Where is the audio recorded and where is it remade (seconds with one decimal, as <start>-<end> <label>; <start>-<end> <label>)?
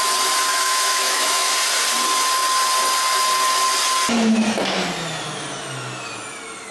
0.0-0.5 recorded; 0.5-1.5 remade; 1.5-6.7 recorded